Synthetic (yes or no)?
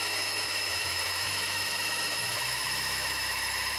yes